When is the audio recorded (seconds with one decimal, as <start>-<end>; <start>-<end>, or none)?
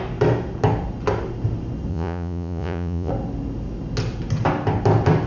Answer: 0.0-1.9; 3.1-5.3